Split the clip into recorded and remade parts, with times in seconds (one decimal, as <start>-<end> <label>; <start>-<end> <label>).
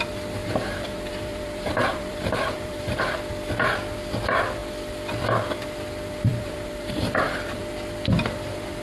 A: 0.0-0.4 recorded; 0.4-3.0 remade; 3.0-6.3 recorded; 6.3-7.6 remade; 7.6-8.8 recorded